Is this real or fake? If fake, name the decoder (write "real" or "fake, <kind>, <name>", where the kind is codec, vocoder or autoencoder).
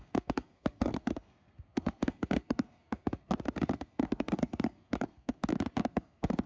fake, codec, SNAC